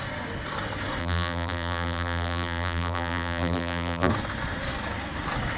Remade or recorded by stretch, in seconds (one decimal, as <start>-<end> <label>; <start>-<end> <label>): 0.0-1.0 recorded; 1.0-4.1 remade; 4.1-5.6 recorded